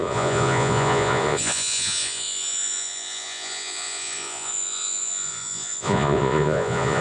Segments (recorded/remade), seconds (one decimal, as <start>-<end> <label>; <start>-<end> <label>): 0.0-7.0 remade